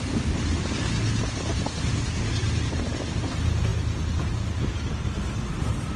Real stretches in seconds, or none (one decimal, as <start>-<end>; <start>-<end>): 0.0-6.0